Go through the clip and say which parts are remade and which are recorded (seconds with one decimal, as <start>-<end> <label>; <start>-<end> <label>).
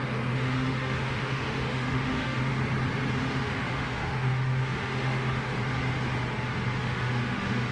0.0-2.5 remade; 2.5-3.2 recorded; 3.2-5.6 remade; 5.6-6.8 recorded; 6.8-7.7 remade